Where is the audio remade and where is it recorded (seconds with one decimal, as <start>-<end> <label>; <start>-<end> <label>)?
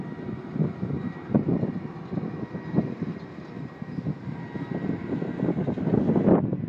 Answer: 0.0-6.7 recorded